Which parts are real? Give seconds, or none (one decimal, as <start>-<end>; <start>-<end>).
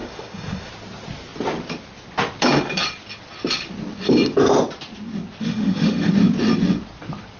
0.7-5.4; 6.1-7.4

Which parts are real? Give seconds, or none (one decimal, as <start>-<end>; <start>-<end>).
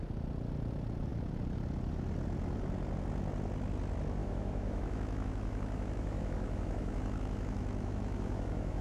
0.0-4.2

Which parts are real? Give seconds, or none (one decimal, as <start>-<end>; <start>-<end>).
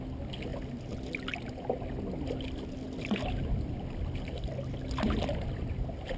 0.0-6.2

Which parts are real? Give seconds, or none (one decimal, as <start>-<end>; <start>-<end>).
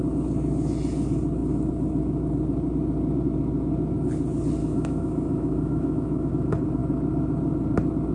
0.0-4.6; 6.3-8.1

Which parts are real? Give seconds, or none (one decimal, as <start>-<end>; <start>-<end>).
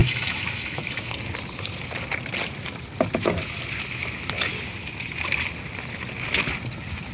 1.1-7.1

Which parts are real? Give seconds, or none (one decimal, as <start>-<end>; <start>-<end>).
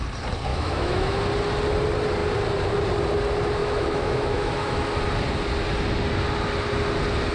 0.0-0.5; 1.2-3.6; 4.9-7.3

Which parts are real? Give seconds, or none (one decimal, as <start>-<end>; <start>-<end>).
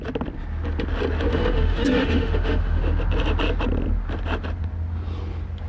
0.0-1.3; 2.8-5.7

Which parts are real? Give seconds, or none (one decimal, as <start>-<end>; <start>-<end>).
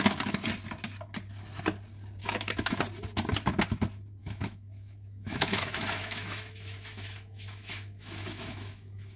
0.0-2.2; 2.8-4.2